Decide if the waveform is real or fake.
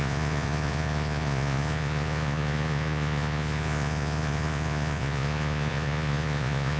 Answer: fake